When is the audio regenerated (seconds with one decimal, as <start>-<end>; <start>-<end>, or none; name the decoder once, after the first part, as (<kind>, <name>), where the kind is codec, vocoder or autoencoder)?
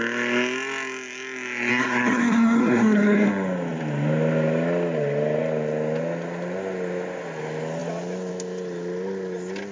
1.7-3.3 (codec, SNAC)